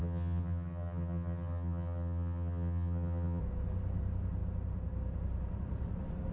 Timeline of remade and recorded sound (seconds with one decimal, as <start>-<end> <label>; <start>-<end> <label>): 0.0-3.4 remade; 3.4-6.3 recorded